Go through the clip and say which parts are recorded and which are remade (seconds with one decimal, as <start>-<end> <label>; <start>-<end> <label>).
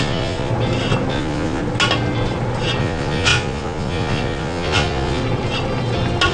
0.0-0.5 remade; 0.5-1.1 recorded; 1.1-1.6 remade; 1.6-2.8 recorded; 2.8-5.2 remade; 5.2-6.3 recorded